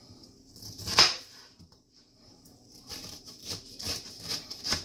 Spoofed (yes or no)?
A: yes